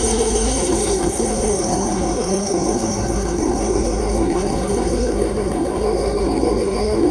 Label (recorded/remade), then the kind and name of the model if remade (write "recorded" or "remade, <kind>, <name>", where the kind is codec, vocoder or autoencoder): remade, codec, SNAC